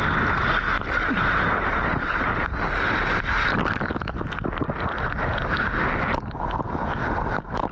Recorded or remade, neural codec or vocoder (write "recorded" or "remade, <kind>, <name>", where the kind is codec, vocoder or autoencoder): recorded